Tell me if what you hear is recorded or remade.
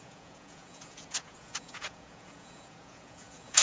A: remade